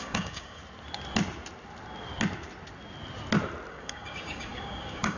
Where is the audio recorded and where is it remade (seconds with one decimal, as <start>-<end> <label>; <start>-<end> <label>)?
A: 0.0-0.6 remade; 0.6-3.7 recorded; 3.7-5.2 remade